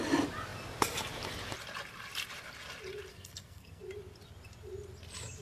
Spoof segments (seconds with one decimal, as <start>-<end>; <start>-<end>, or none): 3.1-3.8